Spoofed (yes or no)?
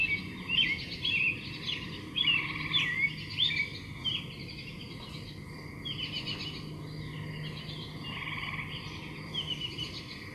no